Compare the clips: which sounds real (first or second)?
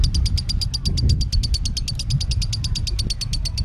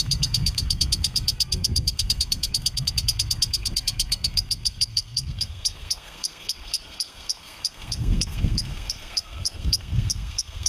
first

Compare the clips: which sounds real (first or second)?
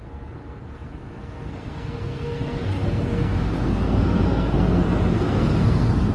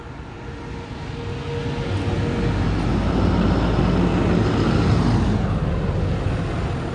second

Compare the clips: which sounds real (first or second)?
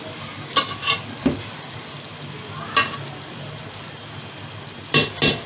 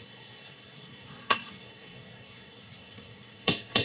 first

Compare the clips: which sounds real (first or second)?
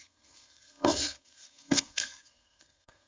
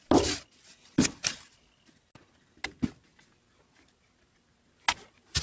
second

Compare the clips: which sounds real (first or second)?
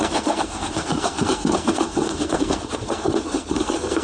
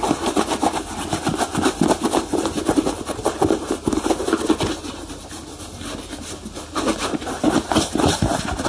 second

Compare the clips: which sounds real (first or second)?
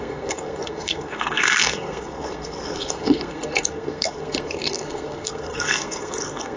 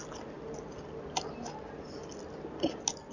second